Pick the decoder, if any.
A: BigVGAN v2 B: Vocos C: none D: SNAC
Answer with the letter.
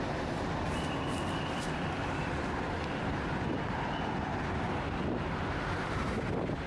C